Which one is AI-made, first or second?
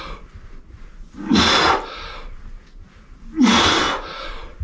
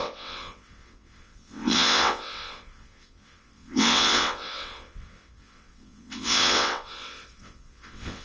second